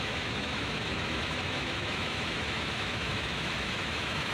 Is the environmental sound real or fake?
fake